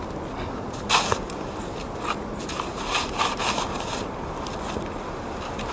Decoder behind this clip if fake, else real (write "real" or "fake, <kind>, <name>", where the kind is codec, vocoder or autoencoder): real